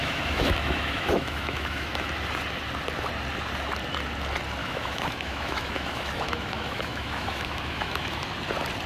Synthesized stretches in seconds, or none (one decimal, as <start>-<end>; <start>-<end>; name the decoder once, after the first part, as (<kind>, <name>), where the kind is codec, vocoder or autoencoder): 0.0-2.1 (autoencoder, DAC-VAE); 4.6-8.2